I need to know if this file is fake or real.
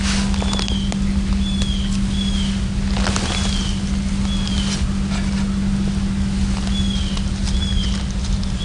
real